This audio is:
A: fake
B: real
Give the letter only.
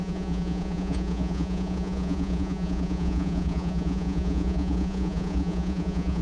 A